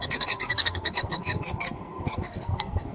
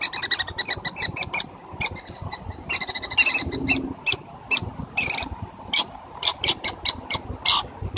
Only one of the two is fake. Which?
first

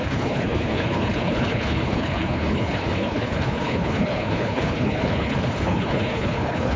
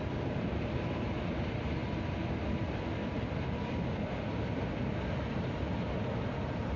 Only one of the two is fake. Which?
first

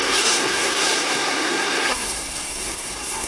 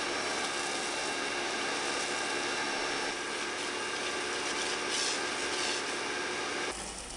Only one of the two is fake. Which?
first